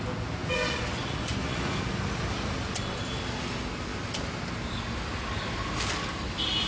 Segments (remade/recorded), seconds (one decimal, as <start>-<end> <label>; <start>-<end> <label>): 0.0-0.4 recorded; 0.4-1.7 remade; 1.7-6.7 recorded